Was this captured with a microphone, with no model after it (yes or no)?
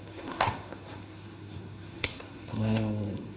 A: no